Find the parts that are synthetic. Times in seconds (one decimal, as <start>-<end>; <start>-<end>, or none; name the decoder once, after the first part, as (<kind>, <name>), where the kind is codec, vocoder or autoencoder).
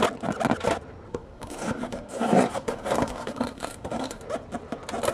1.1-4.2 (codec, SNAC)